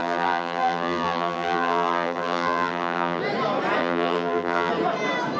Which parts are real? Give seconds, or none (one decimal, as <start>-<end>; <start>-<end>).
3.2-3.8; 4.7-5.4